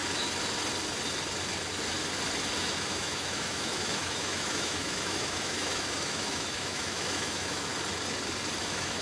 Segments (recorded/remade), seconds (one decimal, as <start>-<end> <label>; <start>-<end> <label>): 0.0-2.6 recorded; 2.6-7.7 remade; 7.7-8.6 recorded; 8.6-9.0 remade